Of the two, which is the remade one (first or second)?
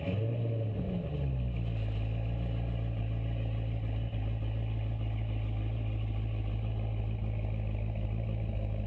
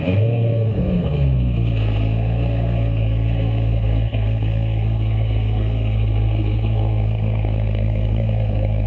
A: second